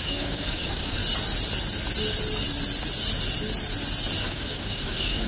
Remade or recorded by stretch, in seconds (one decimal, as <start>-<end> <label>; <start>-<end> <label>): 0.0-1.0 remade; 1.0-4.2 recorded; 4.2-5.3 remade